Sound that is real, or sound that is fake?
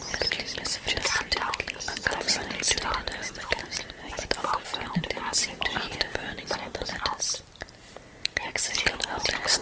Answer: real